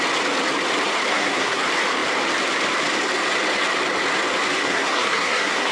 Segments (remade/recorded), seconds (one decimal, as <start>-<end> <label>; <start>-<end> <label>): 0.0-1.1 recorded; 1.1-1.6 remade; 1.6-4.6 recorded; 4.6-5.7 remade